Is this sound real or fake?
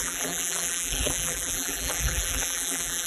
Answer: fake